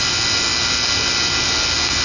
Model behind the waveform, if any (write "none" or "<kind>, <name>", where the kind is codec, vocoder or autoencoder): none